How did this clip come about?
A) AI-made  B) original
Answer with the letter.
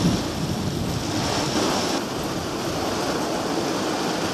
B